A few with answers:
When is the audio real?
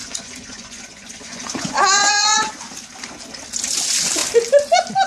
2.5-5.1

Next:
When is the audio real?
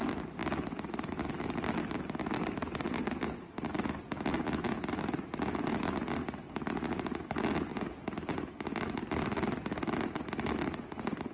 0.0-11.3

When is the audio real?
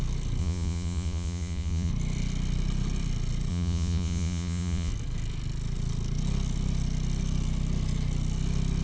0.0-0.4; 1.9-3.5; 4.9-8.8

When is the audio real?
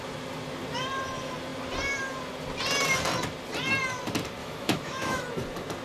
0.0-4.4; 5.2-5.8